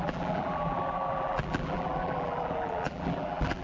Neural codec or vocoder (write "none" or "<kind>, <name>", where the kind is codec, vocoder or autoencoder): vocoder, BigVGAN v2